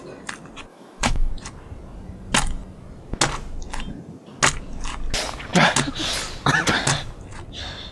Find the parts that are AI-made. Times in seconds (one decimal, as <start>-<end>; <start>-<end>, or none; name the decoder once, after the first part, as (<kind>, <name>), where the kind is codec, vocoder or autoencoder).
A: 0.7-1.3 (autoencoder, DAC-VAE)